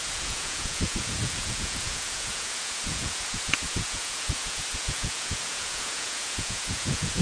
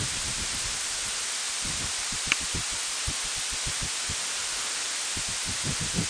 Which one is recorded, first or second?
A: second